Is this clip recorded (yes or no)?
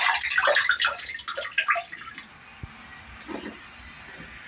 yes